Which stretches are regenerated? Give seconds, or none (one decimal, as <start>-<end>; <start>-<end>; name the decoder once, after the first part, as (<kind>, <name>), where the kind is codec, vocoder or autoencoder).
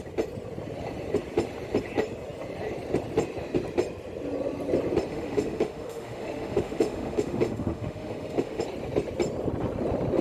5.1-8.6 (autoencoder, DAC-VAE)